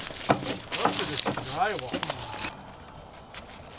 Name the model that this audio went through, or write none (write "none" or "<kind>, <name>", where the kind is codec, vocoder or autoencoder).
none